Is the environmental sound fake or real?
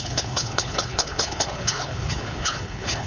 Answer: fake